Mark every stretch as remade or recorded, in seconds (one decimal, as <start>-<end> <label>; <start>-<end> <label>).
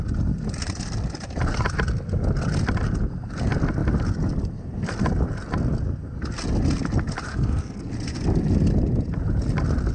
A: 0.0-7.3 recorded; 7.3-7.9 remade; 7.9-9.9 recorded